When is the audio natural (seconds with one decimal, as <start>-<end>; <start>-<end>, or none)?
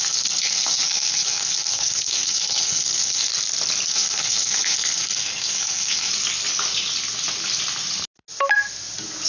3.3-3.9; 6.1-9.3